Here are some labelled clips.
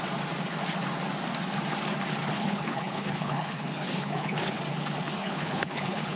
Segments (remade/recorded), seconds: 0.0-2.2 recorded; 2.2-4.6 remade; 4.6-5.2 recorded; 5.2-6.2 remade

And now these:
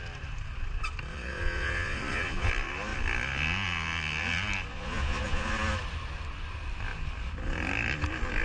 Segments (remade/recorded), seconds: 0.0-1.1 recorded; 1.1-2.5 remade; 2.5-4.7 recorded; 4.7-5.5 remade; 5.5-8.4 recorded

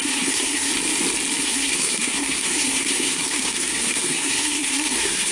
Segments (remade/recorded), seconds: 0.0-0.7 remade; 0.7-1.4 recorded; 1.4-5.3 remade

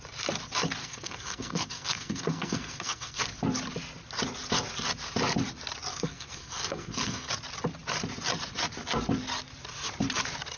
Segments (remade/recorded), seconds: 0.0-0.8 recorded; 0.8-3.2 remade; 3.2-5.9 recorded; 5.9-7.3 remade; 7.3-10.6 recorded

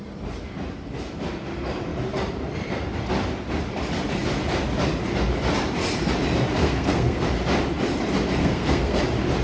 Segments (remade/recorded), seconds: 0.0-6.6 recorded; 6.6-7.3 remade; 7.3-8.4 recorded; 8.4-9.0 remade; 9.0-9.4 recorded

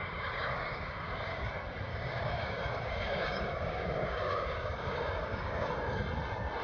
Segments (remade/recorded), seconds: 0.0-1.5 remade; 1.5-1.9 recorded; 1.9-5.7 remade; 5.7-6.6 recorded

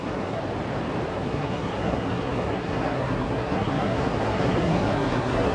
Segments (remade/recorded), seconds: 0.0-0.4 remade; 0.4-1.1 recorded; 1.1-5.5 remade

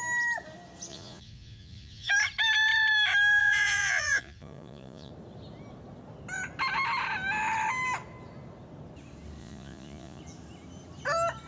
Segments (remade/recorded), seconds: 0.0-0.9 recorded; 0.9-2.1 remade; 2.1-3.4 recorded; 3.4-5.1 remade; 5.1-9.4 recorded; 9.4-10.2 remade; 10.2-11.5 recorded